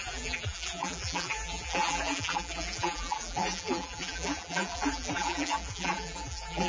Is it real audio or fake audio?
fake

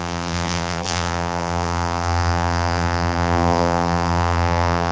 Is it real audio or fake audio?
fake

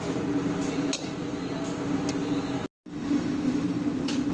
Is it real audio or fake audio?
real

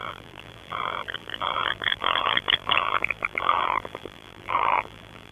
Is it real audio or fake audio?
fake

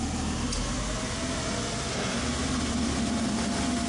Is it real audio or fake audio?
real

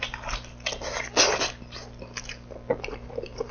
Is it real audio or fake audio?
real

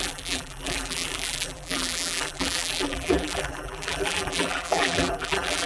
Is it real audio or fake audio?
fake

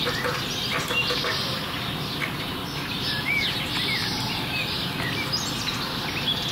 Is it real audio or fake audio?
real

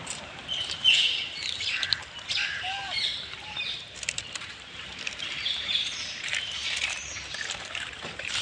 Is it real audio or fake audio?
fake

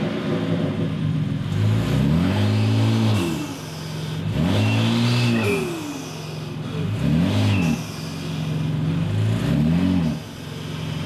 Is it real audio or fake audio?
real